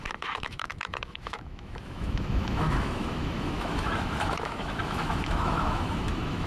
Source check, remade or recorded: remade